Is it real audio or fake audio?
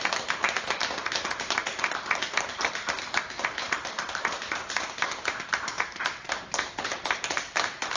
real